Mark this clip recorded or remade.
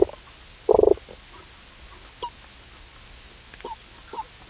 remade